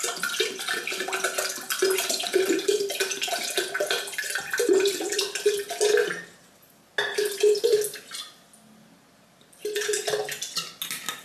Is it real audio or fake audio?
real